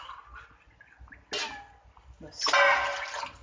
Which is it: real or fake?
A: real